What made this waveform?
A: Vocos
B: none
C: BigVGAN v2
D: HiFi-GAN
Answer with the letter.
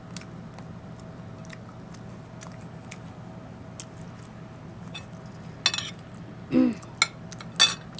B